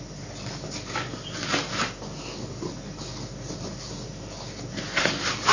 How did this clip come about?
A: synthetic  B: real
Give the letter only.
B